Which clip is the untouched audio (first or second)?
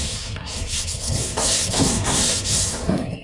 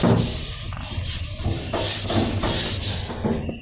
second